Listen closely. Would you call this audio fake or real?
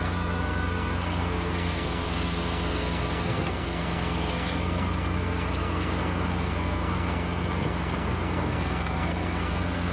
fake